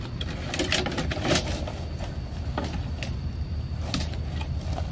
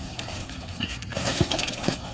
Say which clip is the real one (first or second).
first